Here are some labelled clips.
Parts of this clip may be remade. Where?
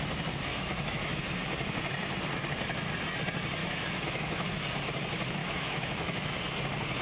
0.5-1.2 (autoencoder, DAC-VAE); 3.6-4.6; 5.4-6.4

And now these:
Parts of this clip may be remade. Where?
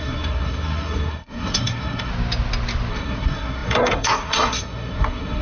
0.0-2.1 (codec, SNAC); 2.9-5.4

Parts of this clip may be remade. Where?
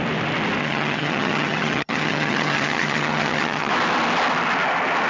0.6-3.7 (vocoder, HiFi-GAN)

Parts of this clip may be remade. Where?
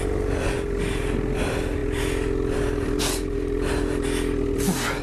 none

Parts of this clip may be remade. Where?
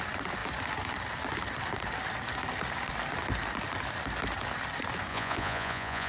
5.1-6.1 (vocoder, Vocos)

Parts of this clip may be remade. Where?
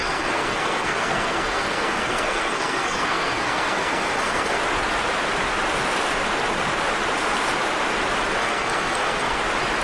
0.0-4.6 (codec, SNAC); 8.4-9.4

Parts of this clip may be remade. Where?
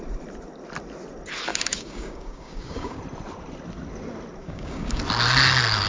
1.5-3.0 (codec, DAC); 4.4-5.0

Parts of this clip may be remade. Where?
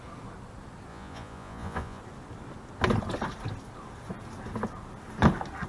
0.9-2.0 (vocoder, Vocos)